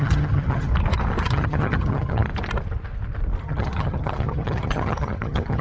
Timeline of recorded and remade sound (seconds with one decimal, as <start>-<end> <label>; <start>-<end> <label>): 0.0-0.7 remade; 0.7-1.2 recorded; 1.2-2.3 remade; 2.3-3.4 recorded; 3.4-5.6 remade